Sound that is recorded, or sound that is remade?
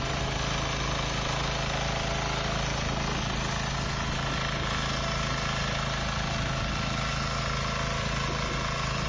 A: recorded